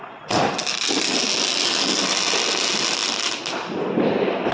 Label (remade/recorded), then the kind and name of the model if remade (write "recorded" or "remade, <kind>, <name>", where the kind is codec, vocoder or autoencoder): recorded